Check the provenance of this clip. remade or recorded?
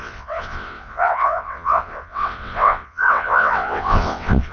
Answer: remade